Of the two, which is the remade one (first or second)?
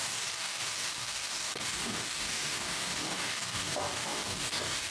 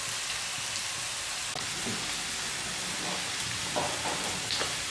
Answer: first